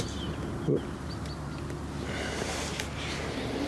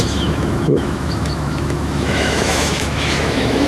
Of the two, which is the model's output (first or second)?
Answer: second